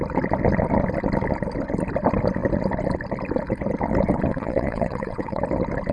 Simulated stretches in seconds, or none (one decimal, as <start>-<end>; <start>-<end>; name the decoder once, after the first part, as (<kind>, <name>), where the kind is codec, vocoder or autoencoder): 4.3-5.4 (vocoder, WaveNeXt)